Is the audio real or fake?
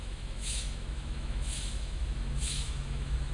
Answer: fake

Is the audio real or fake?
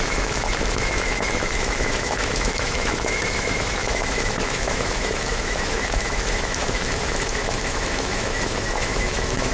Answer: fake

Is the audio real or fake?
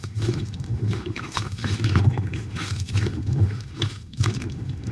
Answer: fake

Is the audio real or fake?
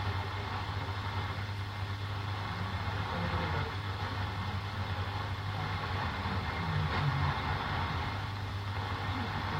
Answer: real